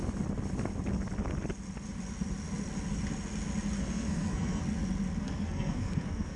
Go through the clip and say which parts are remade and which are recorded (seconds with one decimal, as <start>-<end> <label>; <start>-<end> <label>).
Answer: 0.0-3.8 recorded; 3.8-4.6 remade; 4.6-5.2 recorded; 5.2-6.4 remade